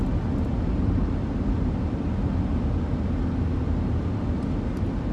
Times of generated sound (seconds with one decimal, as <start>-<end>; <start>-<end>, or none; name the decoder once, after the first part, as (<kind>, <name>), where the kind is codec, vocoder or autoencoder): none